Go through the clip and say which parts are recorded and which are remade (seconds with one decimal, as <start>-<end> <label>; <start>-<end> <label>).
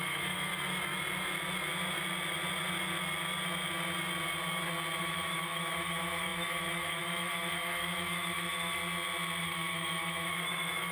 0.0-0.5 remade; 0.5-5.0 recorded; 5.0-8.8 remade; 8.8-9.4 recorded; 9.4-10.9 remade